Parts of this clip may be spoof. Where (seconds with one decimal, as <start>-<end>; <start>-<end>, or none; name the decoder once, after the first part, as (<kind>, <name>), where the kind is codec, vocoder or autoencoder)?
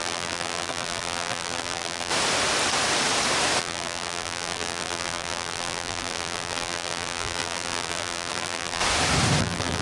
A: 0.0-2.1 (vocoder, BigVGAN v2); 3.6-8.8; 9.4-9.8